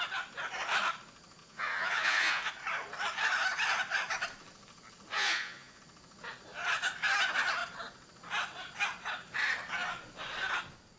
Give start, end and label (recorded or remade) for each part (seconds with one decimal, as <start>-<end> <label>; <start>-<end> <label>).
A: 0.0-1.4 recorded; 1.4-2.5 remade; 2.5-5.1 recorded; 5.1-5.8 remade; 5.8-11.0 recorded